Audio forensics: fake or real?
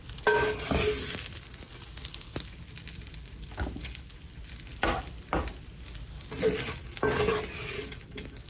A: real